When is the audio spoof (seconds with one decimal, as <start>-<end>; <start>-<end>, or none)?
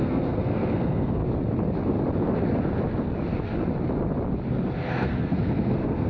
0.0-1.2; 4.9-6.1